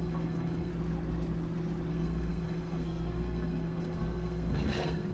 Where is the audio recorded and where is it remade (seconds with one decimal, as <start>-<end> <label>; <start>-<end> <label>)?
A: 0.0-0.7 remade; 0.7-1.9 recorded; 1.9-5.1 remade